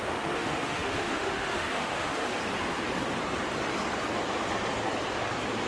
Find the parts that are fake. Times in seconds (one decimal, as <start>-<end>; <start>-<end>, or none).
0.0-2.3